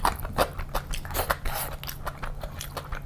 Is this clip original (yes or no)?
yes